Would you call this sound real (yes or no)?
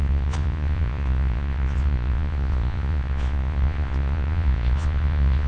no